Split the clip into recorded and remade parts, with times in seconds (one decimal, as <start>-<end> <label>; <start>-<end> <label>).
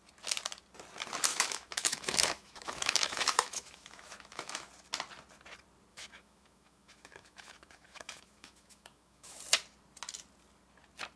0.0-1.3 recorded; 1.3-4.7 remade; 4.7-5.9 recorded; 5.9-9.4 remade; 9.4-11.2 recorded